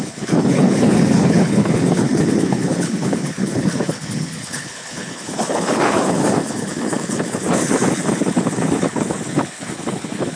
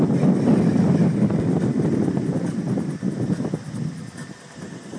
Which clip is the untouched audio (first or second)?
second